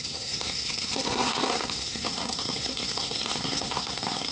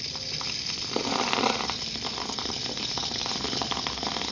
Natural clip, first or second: second